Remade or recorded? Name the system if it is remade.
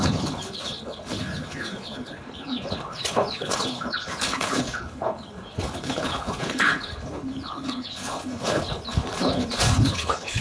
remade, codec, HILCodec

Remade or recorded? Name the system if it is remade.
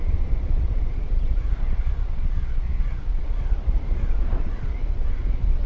remade, vocoder, Vocos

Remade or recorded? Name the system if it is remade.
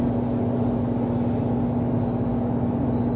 recorded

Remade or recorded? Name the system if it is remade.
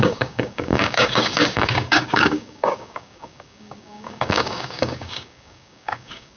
remade, codec, DAC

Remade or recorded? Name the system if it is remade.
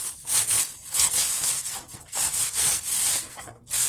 remade, codec, SNAC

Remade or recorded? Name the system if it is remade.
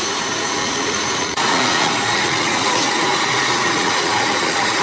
remade, vocoder, Vocos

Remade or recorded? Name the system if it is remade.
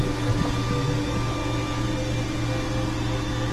recorded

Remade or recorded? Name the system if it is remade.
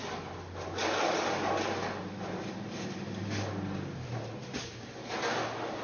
recorded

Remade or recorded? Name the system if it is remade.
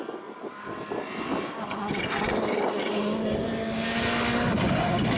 recorded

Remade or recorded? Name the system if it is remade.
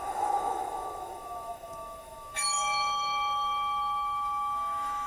remade, autoencoder, DAC-VAE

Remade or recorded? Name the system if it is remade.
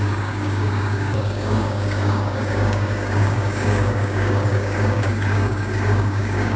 remade, codec, DAC